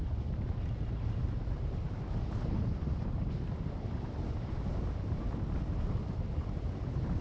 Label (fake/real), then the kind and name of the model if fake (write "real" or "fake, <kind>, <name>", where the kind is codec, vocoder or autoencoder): real